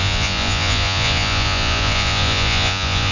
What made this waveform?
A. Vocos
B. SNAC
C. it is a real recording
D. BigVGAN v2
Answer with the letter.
A